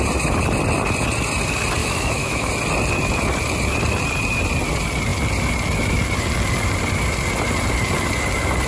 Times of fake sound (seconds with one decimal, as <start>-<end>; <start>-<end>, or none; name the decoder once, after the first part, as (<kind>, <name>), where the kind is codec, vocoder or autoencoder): 1.8-2.5 (autoencoder, DAC-VAE)